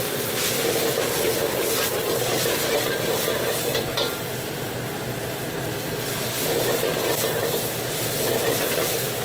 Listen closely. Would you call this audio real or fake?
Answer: real